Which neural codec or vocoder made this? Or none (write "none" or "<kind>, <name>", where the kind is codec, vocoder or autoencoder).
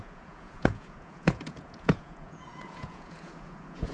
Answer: vocoder, Vocos